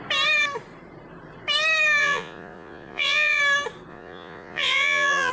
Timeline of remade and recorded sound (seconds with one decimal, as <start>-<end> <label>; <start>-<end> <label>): 0.0-2.0 recorded; 2.0-3.4 remade; 3.4-3.9 recorded; 3.9-5.3 remade